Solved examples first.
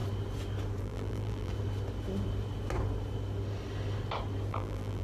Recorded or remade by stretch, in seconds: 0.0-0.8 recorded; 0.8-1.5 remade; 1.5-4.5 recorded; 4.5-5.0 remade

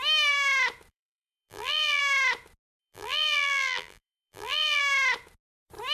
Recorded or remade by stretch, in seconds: 0.0-0.9 recorded; 0.9-2.0 remade; 2.0-2.8 recorded; 2.8-4.8 remade; 4.8-5.9 recorded

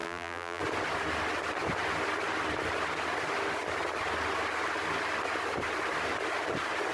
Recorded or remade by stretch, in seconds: 0.0-0.6 remade; 0.6-6.9 recorded

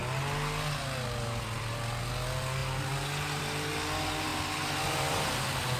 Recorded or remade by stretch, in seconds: 0.0-5.8 recorded